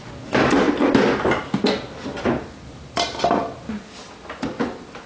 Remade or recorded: recorded